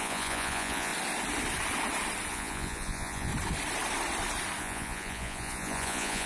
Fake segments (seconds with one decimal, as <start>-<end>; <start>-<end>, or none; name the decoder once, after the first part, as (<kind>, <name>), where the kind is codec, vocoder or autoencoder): 0.0-0.9 (vocoder, Vocos); 2.3-3.3; 4.6-6.3